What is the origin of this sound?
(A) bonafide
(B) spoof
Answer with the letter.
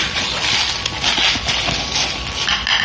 A